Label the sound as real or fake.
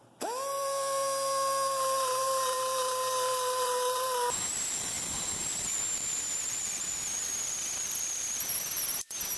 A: fake